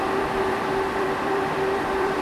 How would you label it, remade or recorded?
remade